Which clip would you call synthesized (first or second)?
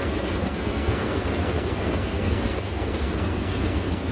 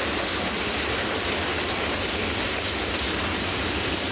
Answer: first